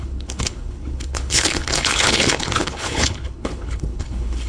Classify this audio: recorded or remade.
remade